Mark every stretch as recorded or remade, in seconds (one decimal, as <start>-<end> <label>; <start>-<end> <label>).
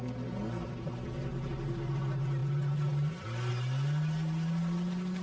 0.0-5.2 recorded